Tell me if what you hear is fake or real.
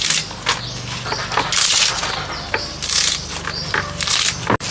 real